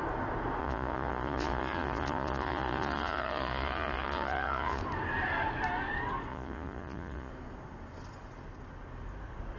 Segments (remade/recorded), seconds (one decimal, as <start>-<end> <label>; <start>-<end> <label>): 0.0-0.6 recorded; 0.6-4.8 remade; 4.8-6.3 recorded; 6.3-7.3 remade; 7.3-9.6 recorded

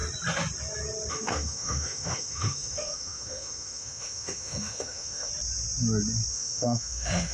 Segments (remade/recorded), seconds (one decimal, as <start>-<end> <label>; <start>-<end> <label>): 0.0-1.1 recorded; 1.1-5.3 remade; 5.3-6.3 recorded; 6.3-7.3 remade

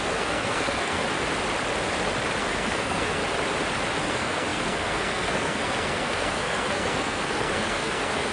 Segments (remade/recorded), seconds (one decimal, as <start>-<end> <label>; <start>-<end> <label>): 0.0-1.0 remade; 1.0-2.4 recorded; 2.4-3.2 remade; 3.2-4.0 recorded; 4.0-8.3 remade

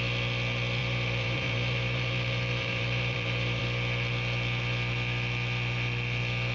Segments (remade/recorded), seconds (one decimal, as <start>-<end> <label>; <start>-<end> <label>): 0.0-0.8 recorded; 0.8-3.6 remade; 3.6-6.5 recorded

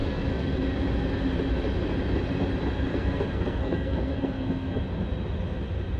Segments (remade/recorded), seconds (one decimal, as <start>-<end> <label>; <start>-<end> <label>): 0.0-0.6 remade; 0.6-2.9 recorded; 2.9-4.8 remade; 4.8-6.0 recorded